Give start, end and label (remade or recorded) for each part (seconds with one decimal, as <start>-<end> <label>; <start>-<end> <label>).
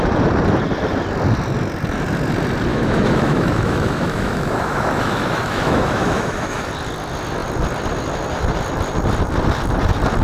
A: 0.0-2.7 recorded; 2.7-6.7 remade; 6.7-10.2 recorded